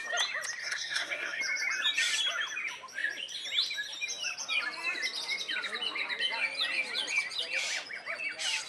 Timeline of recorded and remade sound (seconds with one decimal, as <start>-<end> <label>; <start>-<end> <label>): 0.0-0.6 recorded; 0.6-1.4 remade; 1.4-8.7 recorded